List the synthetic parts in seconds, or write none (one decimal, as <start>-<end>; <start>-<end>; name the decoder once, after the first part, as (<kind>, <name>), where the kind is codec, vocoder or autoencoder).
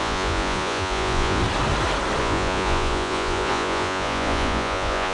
0.0-1.4 (vocoder, Vocos); 2.2-5.1